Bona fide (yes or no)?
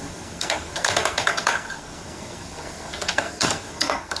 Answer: no